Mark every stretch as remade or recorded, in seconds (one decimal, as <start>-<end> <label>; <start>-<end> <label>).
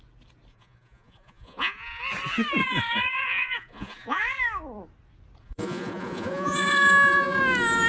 0.0-0.5 recorded; 0.5-2.0 remade; 2.0-2.6 recorded; 2.6-4.4 remade; 4.4-5.4 recorded; 5.4-7.4 remade; 7.4-7.9 recorded